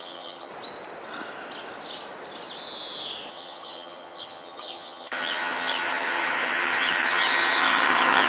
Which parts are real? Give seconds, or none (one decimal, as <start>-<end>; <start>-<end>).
0.5-3.3